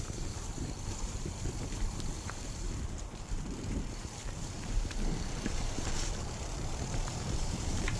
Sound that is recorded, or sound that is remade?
remade